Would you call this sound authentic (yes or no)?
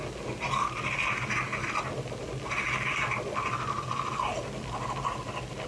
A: yes